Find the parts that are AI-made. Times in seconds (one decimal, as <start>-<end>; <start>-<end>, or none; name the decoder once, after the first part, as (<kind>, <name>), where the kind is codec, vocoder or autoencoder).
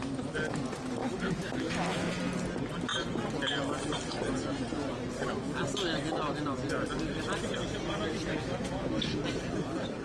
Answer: 1.0-2.1 (autoencoder, DAC-VAE); 8.3-8.9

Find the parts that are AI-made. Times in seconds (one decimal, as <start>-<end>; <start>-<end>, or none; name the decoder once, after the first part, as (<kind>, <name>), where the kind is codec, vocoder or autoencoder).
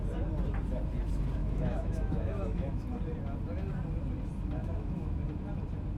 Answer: 1.4-2.8 (autoencoder, DAC-VAE); 4.6-5.2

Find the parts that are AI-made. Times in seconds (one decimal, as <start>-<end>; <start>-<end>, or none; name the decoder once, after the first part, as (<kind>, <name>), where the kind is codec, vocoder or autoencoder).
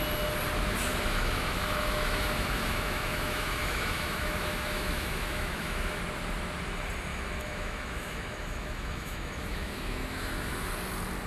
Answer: 0.9-6.0 (autoencoder, DAC-VAE); 7.1-10.7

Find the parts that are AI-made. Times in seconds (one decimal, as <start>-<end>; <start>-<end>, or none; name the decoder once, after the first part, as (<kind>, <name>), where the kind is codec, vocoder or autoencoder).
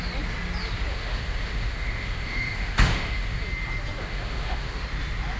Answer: 0.9-3.4 (autoencoder, DAC-VAE); 4.0-4.8